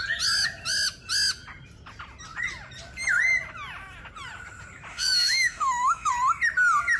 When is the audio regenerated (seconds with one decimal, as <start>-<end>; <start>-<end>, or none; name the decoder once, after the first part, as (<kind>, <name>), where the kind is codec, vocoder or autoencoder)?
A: 4.9-6.1 (autoencoder, DAC-VAE)